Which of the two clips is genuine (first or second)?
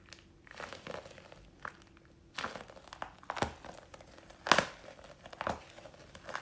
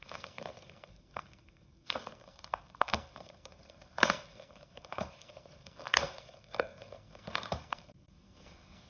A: first